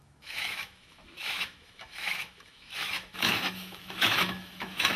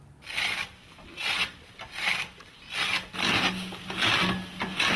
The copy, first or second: first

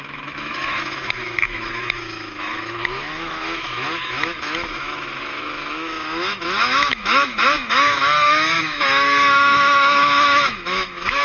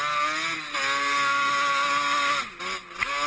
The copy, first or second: first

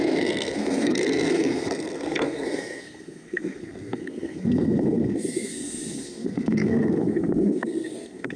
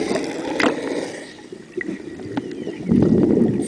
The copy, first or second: first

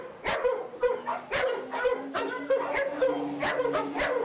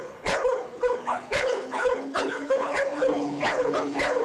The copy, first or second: second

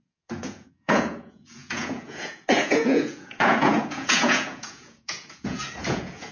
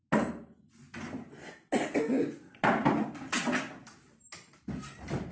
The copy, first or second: first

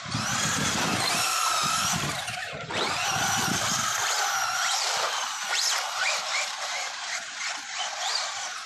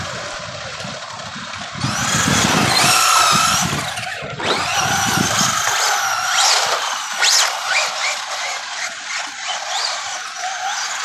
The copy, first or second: first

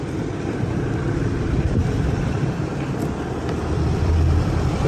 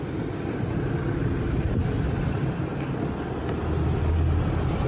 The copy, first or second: first